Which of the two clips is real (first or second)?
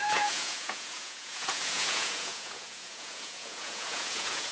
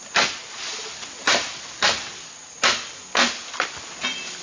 second